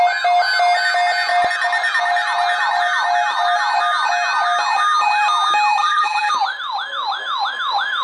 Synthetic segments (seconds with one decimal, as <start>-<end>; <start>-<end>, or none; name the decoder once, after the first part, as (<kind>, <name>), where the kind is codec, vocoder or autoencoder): 5.8-6.3 (vocoder, BigVGAN v2)